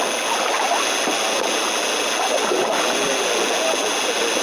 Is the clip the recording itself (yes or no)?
yes